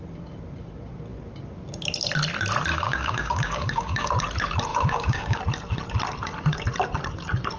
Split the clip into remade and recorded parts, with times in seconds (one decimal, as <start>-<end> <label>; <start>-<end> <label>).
0.0-2.7 recorded; 2.7-4.1 remade; 4.1-4.7 recorded; 4.7-5.4 remade; 5.4-7.6 recorded